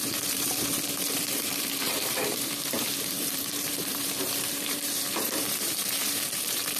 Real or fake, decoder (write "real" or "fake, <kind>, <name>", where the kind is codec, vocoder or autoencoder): fake, vocoder, BigVGAN v2